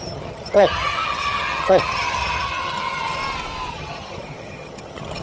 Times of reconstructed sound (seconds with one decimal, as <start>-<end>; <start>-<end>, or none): 0.0-3.2; 3.7-5.2